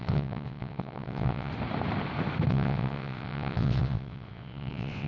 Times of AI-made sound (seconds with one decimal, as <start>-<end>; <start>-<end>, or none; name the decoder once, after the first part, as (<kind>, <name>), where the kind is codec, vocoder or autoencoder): 0.0-1.5 (vocoder, WaveNeXt); 2.5-5.1